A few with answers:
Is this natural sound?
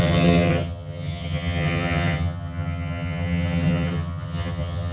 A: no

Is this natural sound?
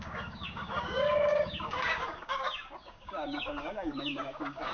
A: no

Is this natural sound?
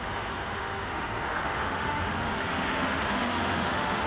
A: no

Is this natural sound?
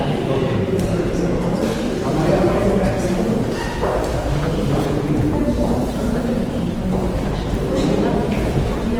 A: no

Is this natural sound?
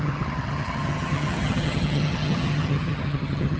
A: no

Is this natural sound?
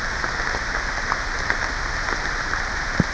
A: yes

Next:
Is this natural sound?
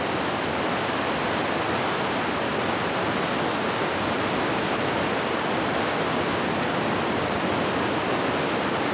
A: yes